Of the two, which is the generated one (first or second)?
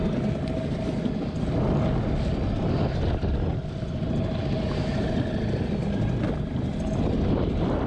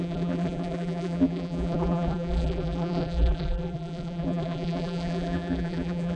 second